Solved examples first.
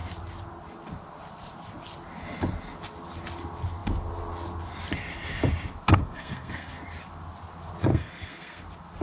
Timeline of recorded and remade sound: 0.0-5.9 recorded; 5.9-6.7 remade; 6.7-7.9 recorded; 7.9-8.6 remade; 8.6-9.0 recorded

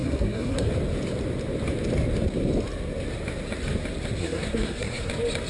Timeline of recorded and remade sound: 0.0-0.7 remade; 0.7-4.2 recorded; 4.2-5.1 remade; 5.1-5.5 recorded

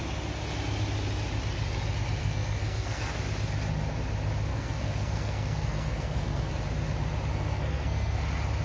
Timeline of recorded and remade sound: 0.0-2.2 recorded; 2.2-3.2 remade; 3.2-4.5 recorded; 4.5-6.5 remade; 6.5-7.3 recorded; 7.3-8.2 remade; 8.2-8.6 recorded

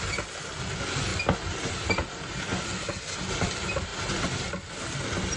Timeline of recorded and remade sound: 0.0-5.4 recorded

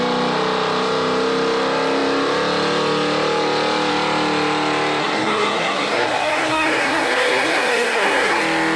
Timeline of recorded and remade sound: 0.0-5.0 recorded; 5.0-8.4 remade; 8.4-8.8 recorded

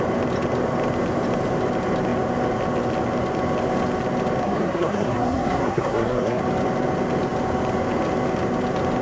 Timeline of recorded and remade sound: 0.0-4.4 recorded; 4.4-6.4 remade; 6.4-9.0 recorded

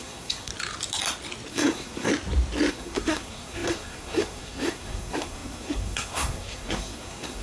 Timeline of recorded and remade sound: 0.0-0.5 remade; 0.5-1.5 recorded; 1.5-2.1 remade; 2.1-2.7 recorded; 2.7-7.4 remade